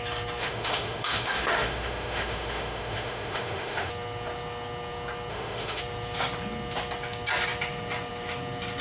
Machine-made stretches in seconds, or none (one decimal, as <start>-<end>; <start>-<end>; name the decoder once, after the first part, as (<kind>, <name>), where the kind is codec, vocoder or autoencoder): 0.4-3.9 (autoencoder, DAC-VAE); 5.3-5.8